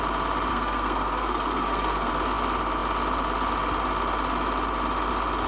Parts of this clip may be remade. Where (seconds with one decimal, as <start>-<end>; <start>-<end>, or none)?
0.5-2.1